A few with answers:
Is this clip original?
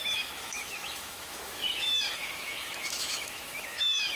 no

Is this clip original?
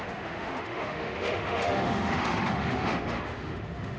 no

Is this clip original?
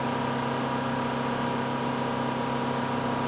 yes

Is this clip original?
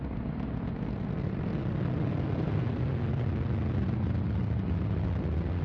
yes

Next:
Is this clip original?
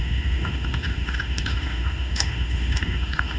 no